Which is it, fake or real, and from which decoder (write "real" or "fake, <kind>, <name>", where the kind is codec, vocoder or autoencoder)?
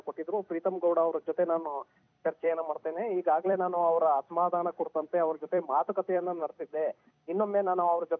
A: fake, vocoder, BigVGAN v2